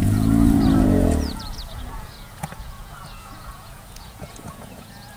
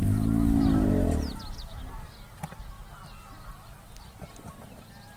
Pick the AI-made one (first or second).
first